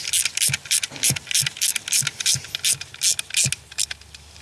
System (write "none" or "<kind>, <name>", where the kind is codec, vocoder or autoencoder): none